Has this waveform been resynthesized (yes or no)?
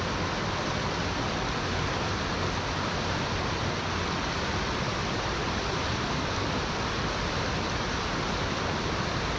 no